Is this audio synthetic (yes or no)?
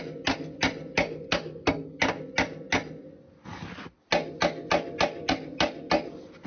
no